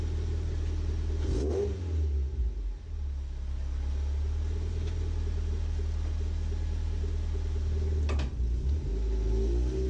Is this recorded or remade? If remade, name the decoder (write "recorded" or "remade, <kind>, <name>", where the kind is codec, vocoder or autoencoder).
recorded